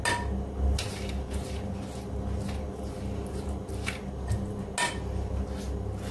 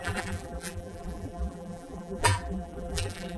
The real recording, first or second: first